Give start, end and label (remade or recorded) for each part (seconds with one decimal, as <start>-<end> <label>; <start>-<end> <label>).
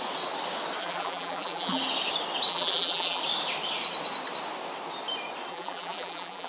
0.0-0.8 recorded; 0.8-1.8 remade; 1.8-2.5 recorded; 2.5-3.2 remade; 3.2-5.5 recorded; 5.5-6.5 remade